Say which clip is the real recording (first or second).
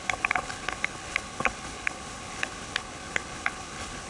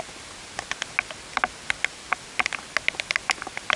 second